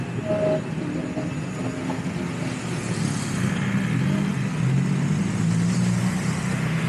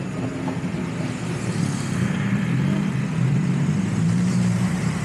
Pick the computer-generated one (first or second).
second